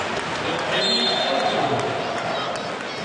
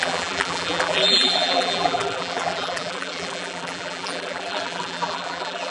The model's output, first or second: second